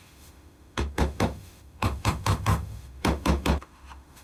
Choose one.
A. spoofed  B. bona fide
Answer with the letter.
A